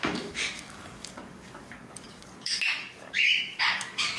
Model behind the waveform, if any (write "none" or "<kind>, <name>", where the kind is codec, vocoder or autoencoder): codec, DAC